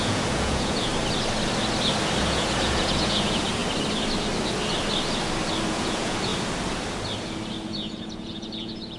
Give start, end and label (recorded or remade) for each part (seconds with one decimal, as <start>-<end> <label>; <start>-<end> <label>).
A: 0.0-0.9 remade; 0.9-2.2 recorded; 2.2-3.6 remade; 3.6-5.7 recorded; 5.7-6.3 remade; 6.3-7.5 recorded; 7.5-9.0 remade